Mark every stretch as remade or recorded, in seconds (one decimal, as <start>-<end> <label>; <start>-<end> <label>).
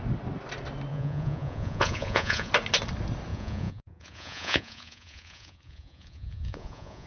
0.0-0.9 recorded; 0.9-2.5 remade; 2.5-3.3 recorded; 3.3-7.1 remade